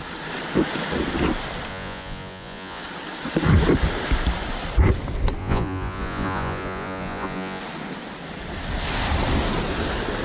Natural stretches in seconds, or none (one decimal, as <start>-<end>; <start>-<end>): 0.0-1.7; 2.8-5.4; 7.6-10.2